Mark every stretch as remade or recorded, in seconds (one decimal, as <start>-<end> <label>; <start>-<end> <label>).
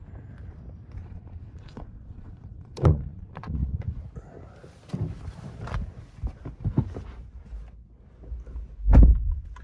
0.0-1.0 recorded; 1.0-4.0 remade; 4.0-9.6 recorded